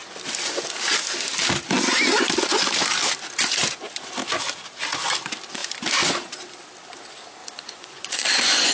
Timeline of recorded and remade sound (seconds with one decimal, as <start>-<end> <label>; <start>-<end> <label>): 0.0-7.4 recorded; 7.4-8.7 remade